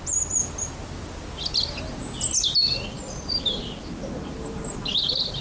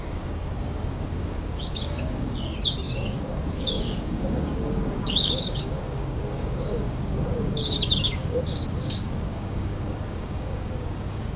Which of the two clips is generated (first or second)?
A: second